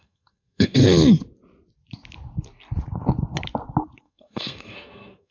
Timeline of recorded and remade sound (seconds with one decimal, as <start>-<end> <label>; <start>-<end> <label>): 0.0-0.8 remade; 0.8-4.0 recorded; 4.0-5.3 remade